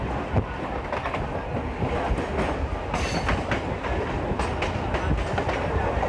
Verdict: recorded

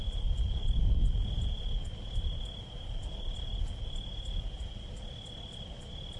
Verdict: recorded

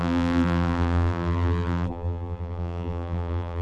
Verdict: remade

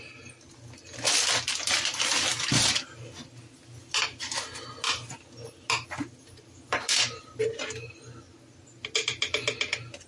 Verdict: recorded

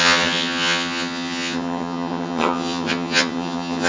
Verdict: remade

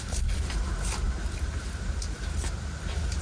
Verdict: recorded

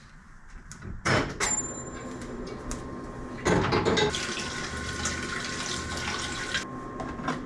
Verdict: recorded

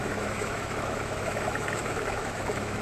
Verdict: remade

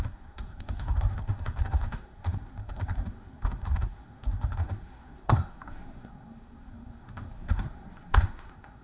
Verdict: remade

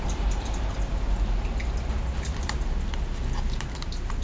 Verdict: recorded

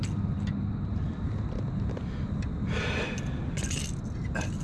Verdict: recorded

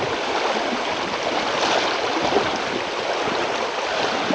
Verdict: recorded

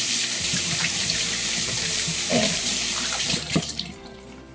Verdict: remade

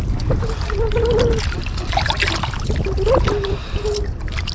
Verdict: recorded